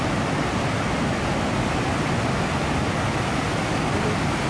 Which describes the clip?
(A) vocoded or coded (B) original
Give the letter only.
B